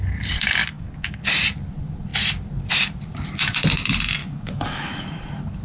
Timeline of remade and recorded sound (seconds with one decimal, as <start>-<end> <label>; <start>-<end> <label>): 0.0-0.6 recorded; 0.6-1.2 remade; 1.2-4.2 recorded; 4.2-4.9 remade; 4.9-5.6 recorded